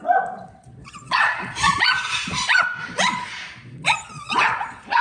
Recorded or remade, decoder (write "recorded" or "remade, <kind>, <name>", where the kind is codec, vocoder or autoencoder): remade, vocoder, Vocos